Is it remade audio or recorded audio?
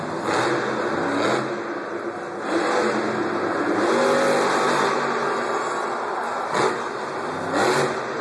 recorded